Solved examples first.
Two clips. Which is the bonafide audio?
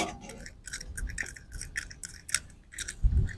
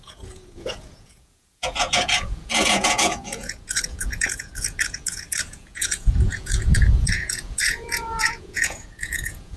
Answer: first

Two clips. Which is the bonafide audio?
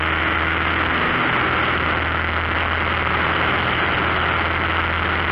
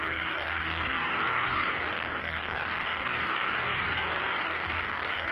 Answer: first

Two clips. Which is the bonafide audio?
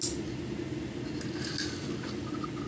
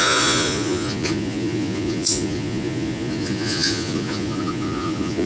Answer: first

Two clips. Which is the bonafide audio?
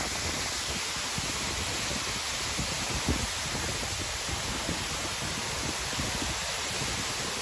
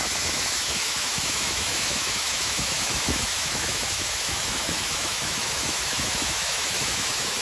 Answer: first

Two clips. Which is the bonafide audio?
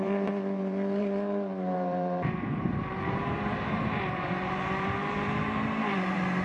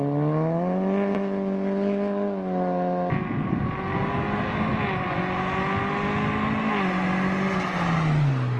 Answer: second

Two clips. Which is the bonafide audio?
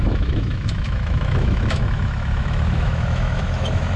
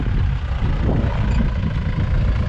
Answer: second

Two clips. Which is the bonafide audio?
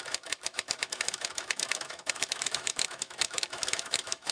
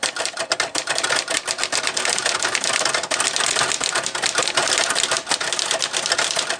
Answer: second